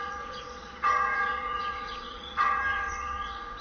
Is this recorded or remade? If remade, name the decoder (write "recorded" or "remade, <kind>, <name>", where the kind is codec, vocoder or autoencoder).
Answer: remade, vocoder, Vocos